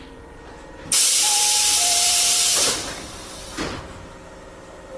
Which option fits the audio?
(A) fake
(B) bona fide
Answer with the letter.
A